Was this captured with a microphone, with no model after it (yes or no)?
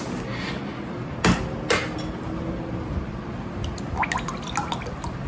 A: yes